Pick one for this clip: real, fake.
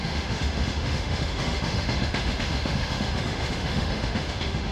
fake